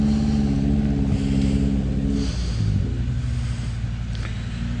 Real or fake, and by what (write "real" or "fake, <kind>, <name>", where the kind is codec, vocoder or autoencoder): real